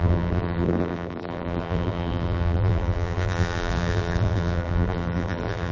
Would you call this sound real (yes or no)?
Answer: no